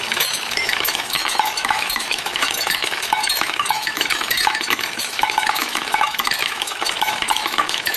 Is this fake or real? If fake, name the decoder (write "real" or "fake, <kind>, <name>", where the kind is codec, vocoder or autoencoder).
fake, autoencoder, DAC-VAE